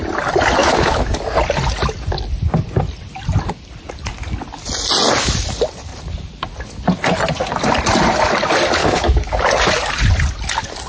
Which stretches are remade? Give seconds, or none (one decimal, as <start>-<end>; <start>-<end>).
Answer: 0.6-1.1; 8.8-9.4